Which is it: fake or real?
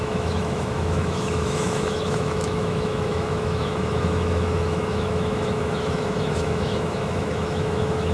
fake